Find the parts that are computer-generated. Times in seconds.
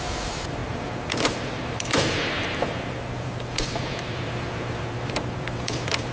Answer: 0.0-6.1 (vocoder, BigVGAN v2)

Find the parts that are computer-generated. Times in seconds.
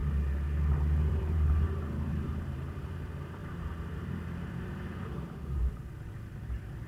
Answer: 1.1-6.9 (vocoder, BigVGAN v2)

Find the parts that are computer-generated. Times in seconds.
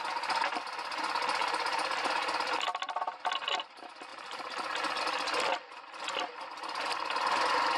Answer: 4.1-5.0 (vocoder, BigVGAN v2)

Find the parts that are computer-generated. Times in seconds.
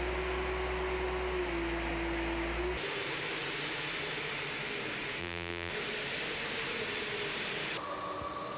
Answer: 5.2-5.7 (vocoder, BigVGAN v2)